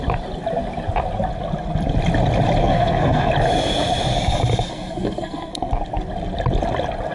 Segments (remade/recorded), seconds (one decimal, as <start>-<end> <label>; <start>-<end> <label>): 0.0-2.6 recorded; 2.6-3.3 remade; 3.3-4.7 recorded; 4.7-5.7 remade; 5.7-7.1 recorded